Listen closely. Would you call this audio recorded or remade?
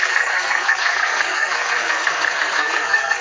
remade